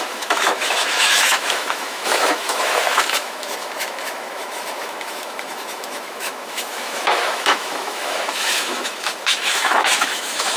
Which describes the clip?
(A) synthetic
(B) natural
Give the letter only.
A